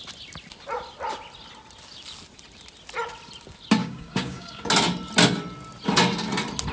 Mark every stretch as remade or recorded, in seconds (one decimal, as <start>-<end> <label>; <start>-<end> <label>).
0.0-3.8 recorded; 3.8-4.6 remade; 4.6-6.7 recorded